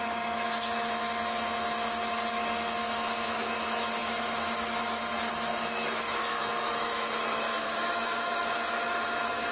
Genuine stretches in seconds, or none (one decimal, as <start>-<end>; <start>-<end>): none

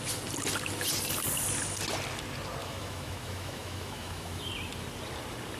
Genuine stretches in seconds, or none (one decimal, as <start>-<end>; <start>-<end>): 0.0-2.6; 4.5-5.6

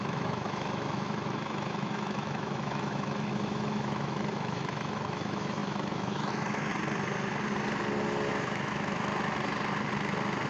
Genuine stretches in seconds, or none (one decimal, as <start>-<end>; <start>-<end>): 6.7-8.3; 9.1-10.5

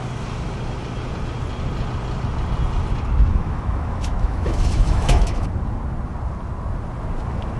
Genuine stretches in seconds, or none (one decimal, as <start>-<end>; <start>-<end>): 0.0-3.3; 5.5-7.6

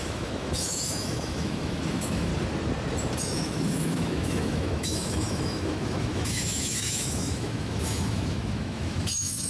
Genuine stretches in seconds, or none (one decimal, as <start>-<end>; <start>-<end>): 2.3-3.2

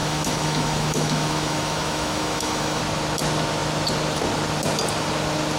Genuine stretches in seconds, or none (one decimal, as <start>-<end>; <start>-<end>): 2.8-5.6

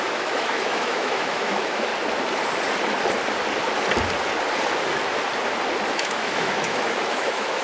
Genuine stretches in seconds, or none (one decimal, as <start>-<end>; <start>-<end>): 1.9-5.9

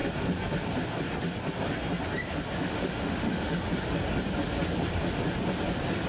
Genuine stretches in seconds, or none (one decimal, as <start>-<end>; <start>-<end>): 0.0-2.6; 3.5-6.1